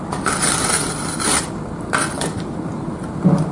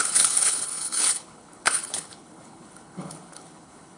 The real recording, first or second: first